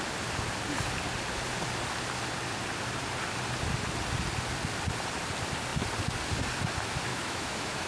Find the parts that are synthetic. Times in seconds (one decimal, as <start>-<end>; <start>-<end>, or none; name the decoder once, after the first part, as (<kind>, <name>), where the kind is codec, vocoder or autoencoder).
7.1-7.9 (autoencoder, DAC-VAE)